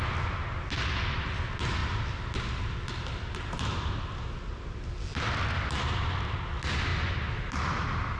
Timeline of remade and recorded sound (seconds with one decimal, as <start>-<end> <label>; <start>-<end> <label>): 0.0-8.2 recorded